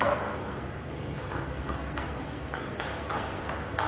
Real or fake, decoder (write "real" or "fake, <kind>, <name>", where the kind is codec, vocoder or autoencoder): fake, codec, SNAC